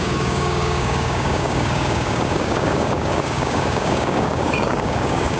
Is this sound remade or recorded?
remade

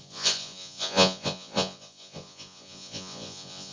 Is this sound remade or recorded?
remade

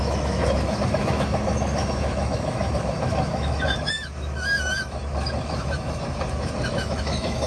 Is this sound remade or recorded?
remade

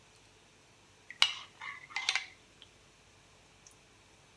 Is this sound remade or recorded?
recorded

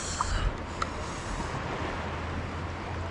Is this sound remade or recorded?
recorded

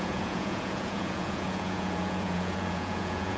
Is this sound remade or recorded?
remade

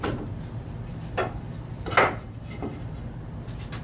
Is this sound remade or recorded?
recorded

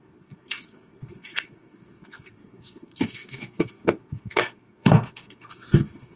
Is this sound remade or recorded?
remade